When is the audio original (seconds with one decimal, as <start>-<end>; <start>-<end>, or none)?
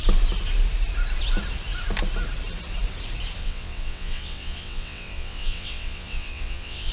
0.0-3.4